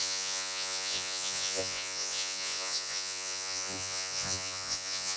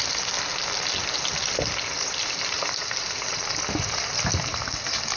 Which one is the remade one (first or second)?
first